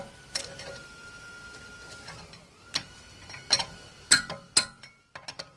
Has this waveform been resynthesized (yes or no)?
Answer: no